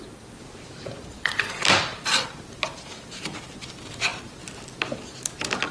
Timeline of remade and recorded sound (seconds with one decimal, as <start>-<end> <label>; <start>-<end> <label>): 0.0-1.0 recorded; 1.0-1.5 remade; 1.5-5.7 recorded